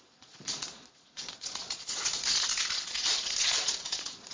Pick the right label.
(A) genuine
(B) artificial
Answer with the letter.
B